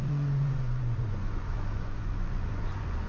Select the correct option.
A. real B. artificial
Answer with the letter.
B